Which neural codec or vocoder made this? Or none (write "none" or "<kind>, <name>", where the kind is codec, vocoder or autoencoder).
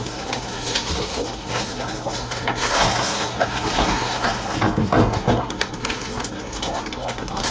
codec, SNAC